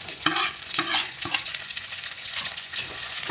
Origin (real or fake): fake